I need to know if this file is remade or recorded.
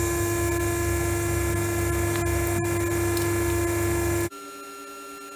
recorded